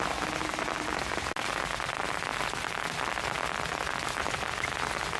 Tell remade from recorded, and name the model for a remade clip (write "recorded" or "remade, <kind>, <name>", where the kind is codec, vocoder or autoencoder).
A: recorded